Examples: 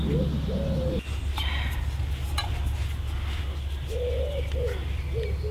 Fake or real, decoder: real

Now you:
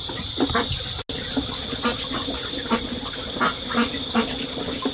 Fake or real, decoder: real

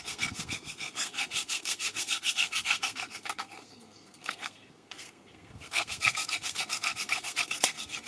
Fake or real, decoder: fake, codec, SNAC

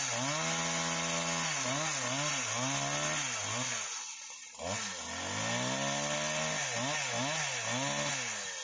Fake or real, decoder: real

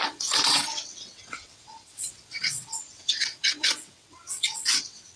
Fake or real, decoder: fake, vocoder, WaveNeXt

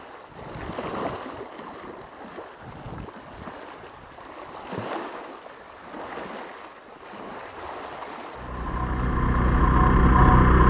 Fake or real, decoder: real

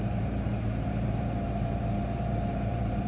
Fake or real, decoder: fake, vocoder, BigVGAN v2